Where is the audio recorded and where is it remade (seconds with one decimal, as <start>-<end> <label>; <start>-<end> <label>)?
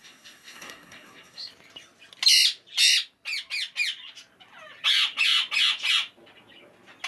0.0-1.5 remade; 1.5-7.1 recorded